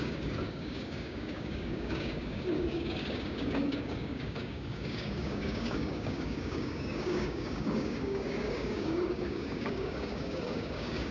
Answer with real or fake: fake